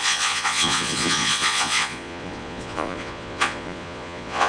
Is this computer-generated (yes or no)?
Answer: yes